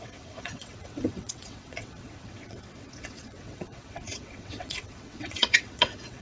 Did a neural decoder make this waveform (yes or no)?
yes